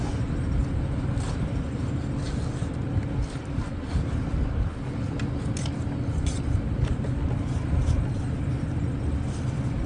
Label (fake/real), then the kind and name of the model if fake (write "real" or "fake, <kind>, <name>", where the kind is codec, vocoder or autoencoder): real